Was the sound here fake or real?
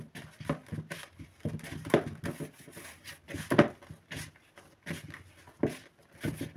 real